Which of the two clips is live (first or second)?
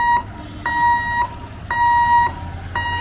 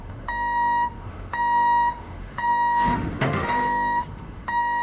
first